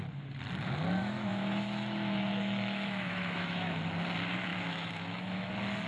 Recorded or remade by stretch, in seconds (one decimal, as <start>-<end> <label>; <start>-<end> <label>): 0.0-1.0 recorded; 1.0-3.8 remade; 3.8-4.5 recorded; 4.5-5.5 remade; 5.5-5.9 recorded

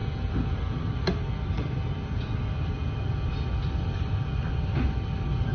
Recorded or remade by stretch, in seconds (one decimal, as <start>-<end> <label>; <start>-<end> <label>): 0.0-5.5 recorded

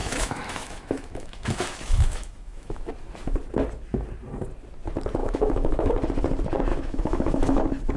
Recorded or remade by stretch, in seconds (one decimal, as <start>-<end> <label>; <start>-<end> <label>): 0.0-2.9 remade; 2.9-5.2 recorded; 5.2-5.9 remade; 5.9-6.7 recorded; 6.7-7.6 remade; 7.6-8.0 recorded